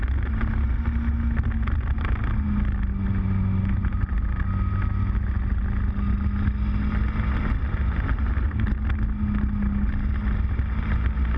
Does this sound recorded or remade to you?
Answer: recorded